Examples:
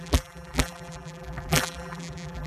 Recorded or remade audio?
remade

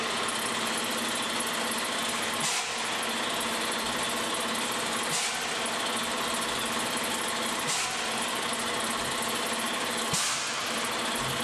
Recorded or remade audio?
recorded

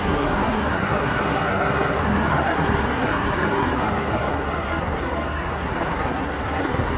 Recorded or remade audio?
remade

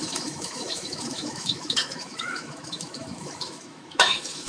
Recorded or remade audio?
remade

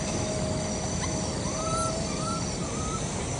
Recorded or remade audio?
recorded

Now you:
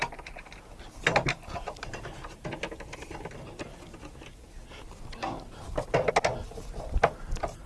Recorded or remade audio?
recorded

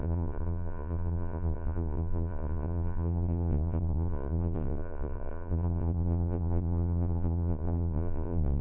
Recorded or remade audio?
remade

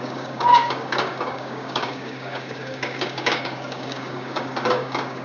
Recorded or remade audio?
remade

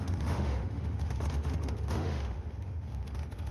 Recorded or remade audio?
remade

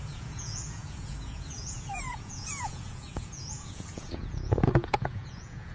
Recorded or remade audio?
remade